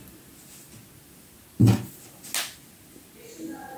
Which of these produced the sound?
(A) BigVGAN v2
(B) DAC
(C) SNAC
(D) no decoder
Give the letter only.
D